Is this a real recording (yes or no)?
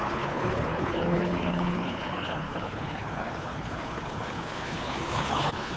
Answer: no